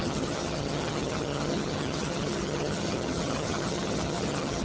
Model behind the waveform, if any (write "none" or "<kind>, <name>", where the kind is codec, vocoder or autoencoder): vocoder, HiFi-GAN